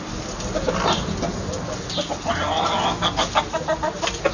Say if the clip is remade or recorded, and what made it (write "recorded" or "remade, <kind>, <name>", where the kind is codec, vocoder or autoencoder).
recorded